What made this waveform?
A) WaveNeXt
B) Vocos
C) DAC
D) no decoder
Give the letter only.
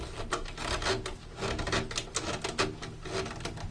D